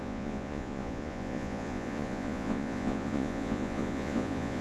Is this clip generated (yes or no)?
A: yes